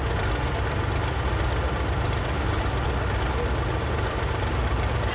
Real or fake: real